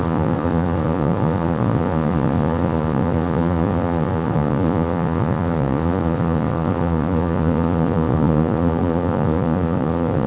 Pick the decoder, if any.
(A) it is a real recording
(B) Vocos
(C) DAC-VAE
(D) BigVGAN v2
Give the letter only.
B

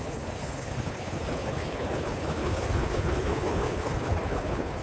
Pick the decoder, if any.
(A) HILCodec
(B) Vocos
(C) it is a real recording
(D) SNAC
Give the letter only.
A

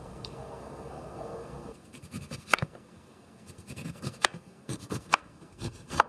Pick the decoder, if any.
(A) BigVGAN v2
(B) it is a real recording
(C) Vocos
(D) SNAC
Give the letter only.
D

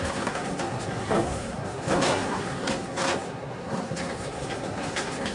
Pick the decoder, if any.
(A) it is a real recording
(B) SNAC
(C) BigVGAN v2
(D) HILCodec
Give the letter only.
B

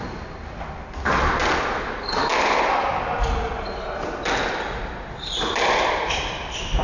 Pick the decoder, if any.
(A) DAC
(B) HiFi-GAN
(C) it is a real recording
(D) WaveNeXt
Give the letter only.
C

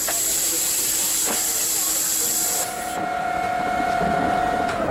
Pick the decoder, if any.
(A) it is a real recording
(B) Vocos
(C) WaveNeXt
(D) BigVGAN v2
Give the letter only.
D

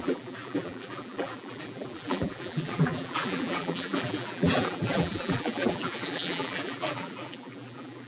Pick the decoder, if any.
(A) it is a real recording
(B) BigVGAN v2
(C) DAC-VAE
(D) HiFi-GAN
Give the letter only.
B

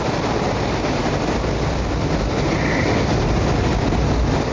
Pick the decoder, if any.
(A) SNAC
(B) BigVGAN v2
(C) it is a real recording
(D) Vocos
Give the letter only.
C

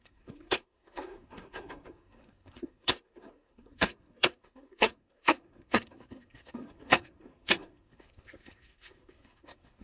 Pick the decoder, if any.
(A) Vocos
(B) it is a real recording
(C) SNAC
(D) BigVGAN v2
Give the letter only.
C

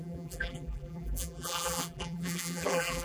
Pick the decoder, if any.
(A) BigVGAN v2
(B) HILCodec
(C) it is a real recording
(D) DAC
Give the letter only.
A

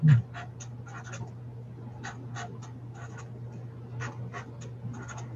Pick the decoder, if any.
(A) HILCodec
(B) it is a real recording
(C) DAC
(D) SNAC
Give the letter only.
B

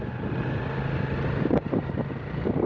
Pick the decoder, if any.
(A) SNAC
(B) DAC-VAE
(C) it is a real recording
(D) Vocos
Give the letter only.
C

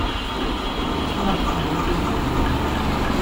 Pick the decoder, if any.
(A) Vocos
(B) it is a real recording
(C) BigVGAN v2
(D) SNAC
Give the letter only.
B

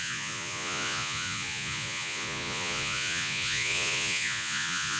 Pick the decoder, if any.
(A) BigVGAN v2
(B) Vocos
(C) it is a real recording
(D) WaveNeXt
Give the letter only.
B